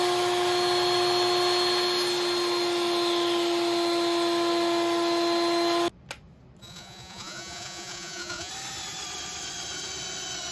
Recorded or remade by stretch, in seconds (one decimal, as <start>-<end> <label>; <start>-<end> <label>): 0.0-6.6 recorded; 6.6-8.5 remade; 8.5-10.5 recorded